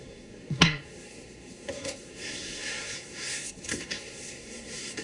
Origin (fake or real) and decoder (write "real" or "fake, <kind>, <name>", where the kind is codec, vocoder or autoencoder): fake, codec, SNAC